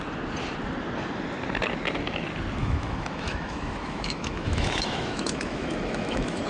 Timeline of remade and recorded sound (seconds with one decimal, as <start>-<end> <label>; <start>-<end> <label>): 0.0-2.6 recorded; 2.6-6.5 remade